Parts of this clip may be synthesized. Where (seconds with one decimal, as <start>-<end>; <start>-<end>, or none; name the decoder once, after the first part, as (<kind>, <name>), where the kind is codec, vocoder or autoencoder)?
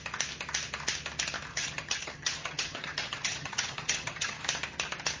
1.5-4.4 (vocoder, HiFi-GAN)